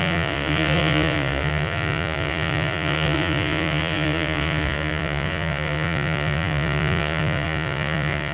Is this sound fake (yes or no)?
yes